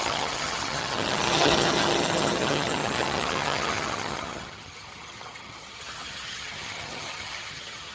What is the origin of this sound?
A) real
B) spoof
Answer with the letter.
B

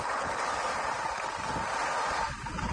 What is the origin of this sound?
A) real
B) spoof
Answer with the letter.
A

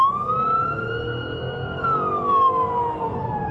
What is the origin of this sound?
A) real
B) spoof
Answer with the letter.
A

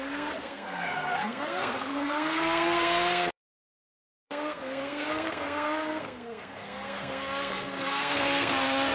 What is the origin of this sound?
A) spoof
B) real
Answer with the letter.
A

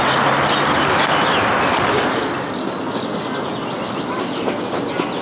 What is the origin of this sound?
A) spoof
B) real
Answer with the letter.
B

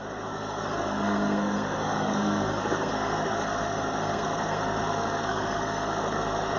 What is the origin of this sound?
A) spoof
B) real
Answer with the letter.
A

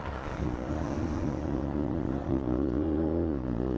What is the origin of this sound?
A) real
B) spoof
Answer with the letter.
B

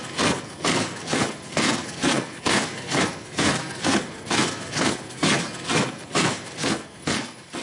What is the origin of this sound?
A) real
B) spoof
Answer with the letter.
B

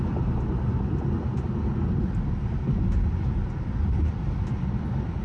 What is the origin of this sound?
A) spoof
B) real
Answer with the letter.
B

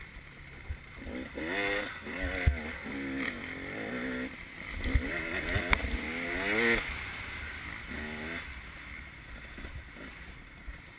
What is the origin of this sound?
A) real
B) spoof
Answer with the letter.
A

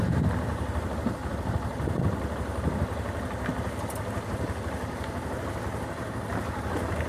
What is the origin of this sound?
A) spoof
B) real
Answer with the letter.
B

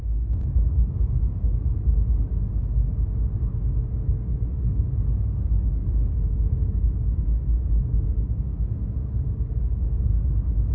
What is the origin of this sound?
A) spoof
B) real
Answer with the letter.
A